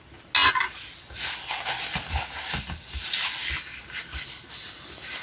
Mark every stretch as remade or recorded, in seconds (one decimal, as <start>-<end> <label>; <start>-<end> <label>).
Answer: 0.0-5.2 recorded

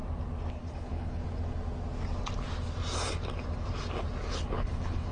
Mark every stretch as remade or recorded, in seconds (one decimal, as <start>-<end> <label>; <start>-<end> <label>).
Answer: 0.0-0.5 recorded; 0.5-1.2 remade; 1.2-4.3 recorded; 4.3-5.1 remade

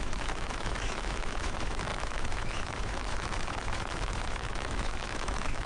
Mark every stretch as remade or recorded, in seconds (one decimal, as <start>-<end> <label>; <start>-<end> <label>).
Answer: 0.0-5.7 remade